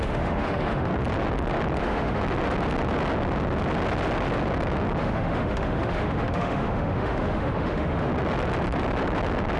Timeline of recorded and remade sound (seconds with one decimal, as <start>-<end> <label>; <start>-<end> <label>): 0.0-0.9 remade; 0.9-1.8 recorded; 1.8-2.2 remade; 2.2-5.0 recorded; 5.0-8.1 remade; 8.1-9.6 recorded